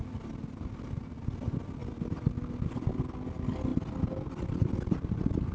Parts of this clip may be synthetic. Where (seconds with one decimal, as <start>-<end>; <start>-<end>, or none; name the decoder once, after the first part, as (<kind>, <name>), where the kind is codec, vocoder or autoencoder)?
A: none